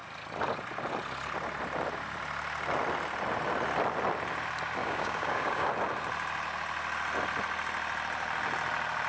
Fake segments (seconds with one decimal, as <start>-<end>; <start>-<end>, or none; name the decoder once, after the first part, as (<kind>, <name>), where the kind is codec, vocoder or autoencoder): 4.8-5.7 (codec, DAC)